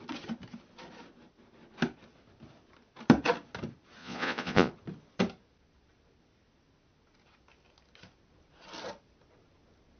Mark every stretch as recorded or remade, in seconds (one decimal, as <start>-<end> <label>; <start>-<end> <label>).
0.0-4.0 recorded; 4.0-4.7 remade; 4.7-10.0 recorded